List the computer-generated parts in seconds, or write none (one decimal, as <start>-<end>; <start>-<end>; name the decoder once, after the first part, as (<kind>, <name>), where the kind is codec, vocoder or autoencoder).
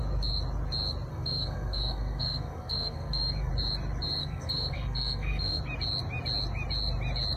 1.1-3.5 (codec, SNAC); 4.2-5.6